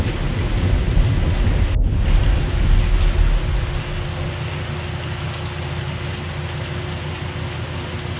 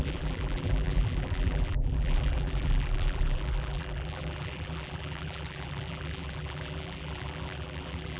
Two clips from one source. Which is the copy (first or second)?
second